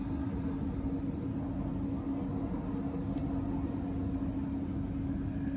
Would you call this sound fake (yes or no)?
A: no